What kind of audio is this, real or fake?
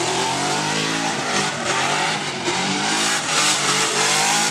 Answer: fake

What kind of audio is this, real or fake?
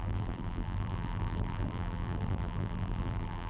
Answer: fake